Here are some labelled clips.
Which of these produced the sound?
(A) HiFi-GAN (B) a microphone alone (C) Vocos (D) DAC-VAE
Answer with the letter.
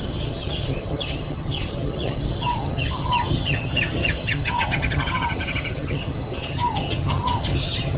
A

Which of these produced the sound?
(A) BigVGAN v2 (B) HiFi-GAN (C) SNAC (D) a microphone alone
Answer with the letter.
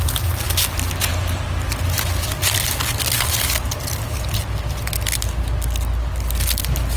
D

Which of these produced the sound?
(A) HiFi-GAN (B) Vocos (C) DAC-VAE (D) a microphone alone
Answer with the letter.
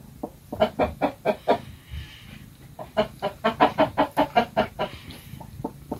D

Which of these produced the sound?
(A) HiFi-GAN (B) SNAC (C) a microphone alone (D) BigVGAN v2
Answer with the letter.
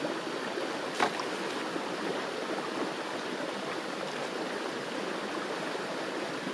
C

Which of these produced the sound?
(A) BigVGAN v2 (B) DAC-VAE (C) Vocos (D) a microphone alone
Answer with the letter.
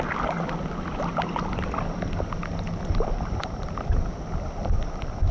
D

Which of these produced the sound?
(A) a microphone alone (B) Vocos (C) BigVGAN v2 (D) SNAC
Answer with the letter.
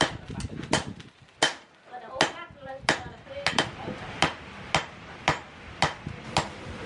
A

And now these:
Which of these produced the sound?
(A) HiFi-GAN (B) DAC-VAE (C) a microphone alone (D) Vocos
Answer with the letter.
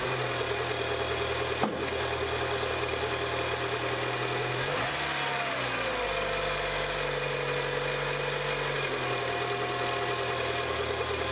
C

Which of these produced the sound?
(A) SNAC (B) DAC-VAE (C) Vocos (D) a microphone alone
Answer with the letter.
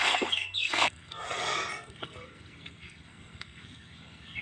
A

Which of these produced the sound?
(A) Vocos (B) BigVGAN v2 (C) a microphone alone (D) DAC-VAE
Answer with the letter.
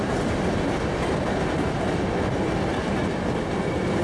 C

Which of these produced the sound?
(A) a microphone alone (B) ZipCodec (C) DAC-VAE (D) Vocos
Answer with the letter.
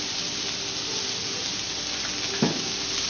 A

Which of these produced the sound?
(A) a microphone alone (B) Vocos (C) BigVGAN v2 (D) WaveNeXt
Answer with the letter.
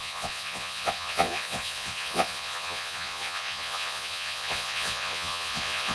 B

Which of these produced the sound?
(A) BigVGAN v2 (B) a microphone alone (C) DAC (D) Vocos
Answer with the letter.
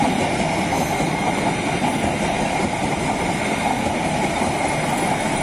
A